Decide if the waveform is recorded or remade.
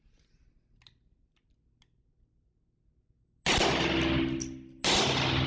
recorded